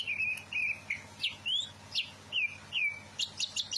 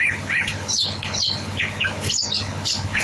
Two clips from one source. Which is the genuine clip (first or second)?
first